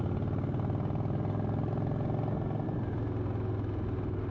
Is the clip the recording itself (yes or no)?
yes